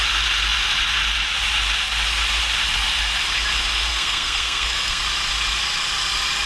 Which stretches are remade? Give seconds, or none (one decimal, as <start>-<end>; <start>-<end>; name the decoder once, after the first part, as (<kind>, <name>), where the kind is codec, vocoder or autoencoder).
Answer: 3.9-5.0 (codec, SNAC)